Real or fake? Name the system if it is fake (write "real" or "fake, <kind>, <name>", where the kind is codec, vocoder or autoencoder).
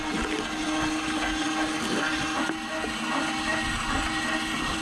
real